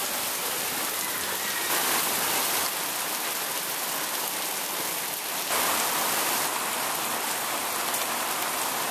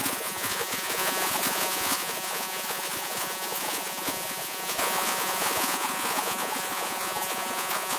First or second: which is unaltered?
first